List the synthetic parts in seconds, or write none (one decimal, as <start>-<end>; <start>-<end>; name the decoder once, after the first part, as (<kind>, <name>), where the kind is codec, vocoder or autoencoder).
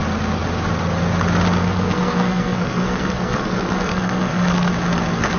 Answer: 1.6-4.7 (codec, SNAC)